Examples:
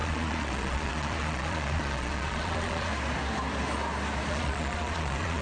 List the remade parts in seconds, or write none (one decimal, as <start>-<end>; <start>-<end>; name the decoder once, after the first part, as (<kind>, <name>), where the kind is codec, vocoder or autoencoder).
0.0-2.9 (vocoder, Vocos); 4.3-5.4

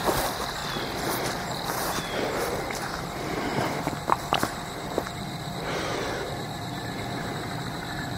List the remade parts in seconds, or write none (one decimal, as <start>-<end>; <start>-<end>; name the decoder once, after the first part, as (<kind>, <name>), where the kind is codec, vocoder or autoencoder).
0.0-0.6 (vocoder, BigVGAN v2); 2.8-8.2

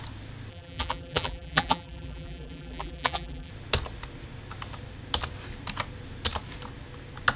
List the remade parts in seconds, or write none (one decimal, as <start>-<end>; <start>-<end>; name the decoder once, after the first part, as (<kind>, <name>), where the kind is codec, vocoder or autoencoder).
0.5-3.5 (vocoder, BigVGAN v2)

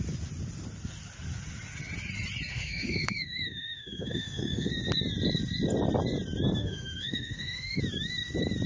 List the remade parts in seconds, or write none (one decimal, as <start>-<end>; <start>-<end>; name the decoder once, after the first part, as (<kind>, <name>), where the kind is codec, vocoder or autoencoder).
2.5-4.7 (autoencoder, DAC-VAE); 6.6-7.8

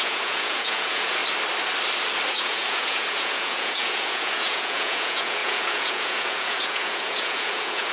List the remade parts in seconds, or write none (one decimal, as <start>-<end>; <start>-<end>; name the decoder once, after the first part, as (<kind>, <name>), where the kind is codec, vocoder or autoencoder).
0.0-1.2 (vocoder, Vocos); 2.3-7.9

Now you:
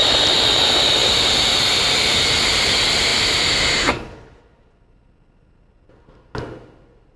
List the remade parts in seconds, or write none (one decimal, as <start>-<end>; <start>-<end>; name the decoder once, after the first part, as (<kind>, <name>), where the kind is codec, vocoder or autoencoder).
0.0-0.5 (vocoder, BigVGAN v2); 1.0-2.5; 3.1-4.7

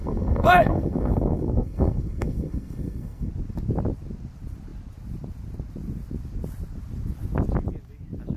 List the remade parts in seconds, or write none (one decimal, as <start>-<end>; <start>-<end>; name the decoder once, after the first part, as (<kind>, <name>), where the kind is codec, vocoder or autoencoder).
0.0-3.3 (codec, SNAC)